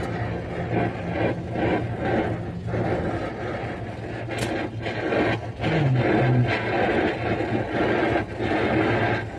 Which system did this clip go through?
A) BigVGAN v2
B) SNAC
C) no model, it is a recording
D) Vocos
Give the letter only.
C